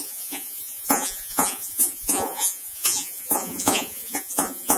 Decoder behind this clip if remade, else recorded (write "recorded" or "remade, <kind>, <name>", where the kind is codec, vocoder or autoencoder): remade, vocoder, Vocos